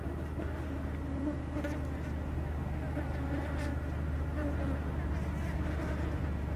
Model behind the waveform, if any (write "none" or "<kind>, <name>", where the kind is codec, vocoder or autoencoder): none